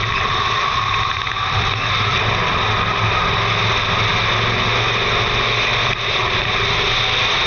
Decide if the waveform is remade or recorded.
recorded